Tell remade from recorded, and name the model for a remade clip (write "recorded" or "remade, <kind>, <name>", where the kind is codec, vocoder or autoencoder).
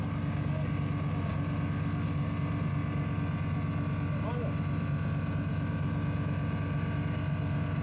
recorded